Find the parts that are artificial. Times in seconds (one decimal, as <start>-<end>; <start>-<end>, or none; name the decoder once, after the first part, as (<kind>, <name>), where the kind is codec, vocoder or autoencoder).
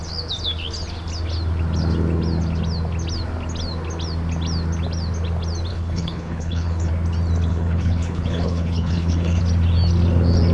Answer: 5.7-6.9 (codec, HILCodec); 7.5-9.4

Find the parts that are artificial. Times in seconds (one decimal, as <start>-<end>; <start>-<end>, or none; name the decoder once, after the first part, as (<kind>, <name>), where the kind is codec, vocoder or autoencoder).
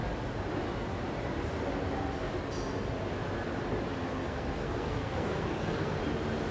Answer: 4.1-6.0 (codec, SNAC)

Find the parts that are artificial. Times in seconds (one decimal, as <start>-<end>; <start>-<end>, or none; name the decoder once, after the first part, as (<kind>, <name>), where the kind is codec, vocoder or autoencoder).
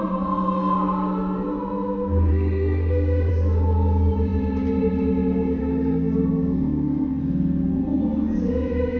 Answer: 2.3-3.3 (codec, SNAC); 5.6-7.2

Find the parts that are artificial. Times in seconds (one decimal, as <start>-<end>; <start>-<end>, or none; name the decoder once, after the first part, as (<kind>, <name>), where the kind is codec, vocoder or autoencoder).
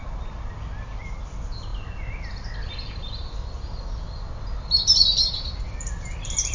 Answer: none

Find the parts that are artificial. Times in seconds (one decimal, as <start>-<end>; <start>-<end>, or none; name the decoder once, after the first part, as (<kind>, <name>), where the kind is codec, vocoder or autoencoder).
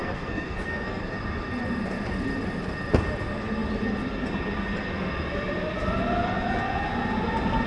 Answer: 0.0-1.0 (codec, SNAC)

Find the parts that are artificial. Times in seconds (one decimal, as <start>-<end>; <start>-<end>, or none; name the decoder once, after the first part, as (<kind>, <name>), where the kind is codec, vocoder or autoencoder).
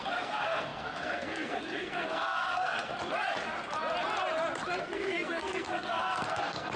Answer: 0.0-2.9 (codec, SNAC); 4.8-6.8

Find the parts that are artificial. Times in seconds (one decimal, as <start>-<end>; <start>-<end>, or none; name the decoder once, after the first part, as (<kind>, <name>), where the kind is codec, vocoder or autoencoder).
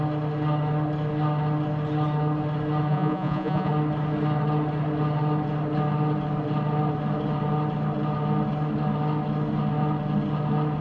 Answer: 2.9-3.7 (vocoder, Vocos)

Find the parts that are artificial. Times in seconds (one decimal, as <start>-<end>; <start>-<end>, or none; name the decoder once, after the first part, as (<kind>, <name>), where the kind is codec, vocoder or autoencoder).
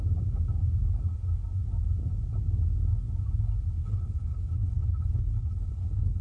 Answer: 3.8-6.2 (codec, HILCodec)